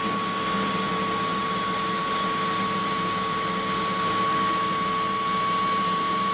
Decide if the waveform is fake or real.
real